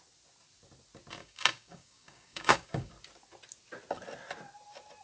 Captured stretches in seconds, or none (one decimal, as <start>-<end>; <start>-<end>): 0.0-1.2; 2.9-5.0